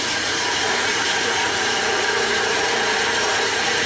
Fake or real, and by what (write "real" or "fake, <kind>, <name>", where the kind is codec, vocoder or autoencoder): fake, vocoder, Vocos